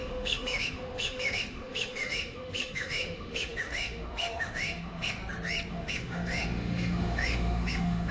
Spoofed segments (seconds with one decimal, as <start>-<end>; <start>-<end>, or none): 0.0-5.2; 5.7-8.1